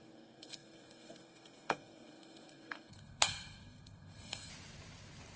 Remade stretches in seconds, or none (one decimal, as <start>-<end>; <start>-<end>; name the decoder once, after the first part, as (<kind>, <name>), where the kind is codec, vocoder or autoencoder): 0.0-4.5 (codec, SNAC)